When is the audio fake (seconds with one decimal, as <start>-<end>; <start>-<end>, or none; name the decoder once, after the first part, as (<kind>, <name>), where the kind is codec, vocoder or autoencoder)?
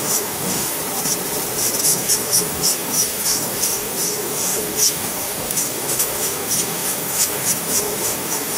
0.0-0.8 (codec, DAC); 1.8-8.6